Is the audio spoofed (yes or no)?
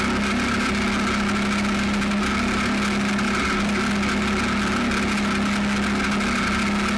no